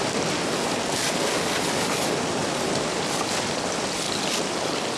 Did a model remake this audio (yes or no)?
no